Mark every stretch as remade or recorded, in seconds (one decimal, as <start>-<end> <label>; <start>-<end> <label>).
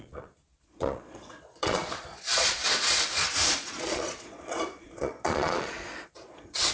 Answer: 0.0-2.6 remade; 2.6-3.5 recorded; 3.5-6.7 remade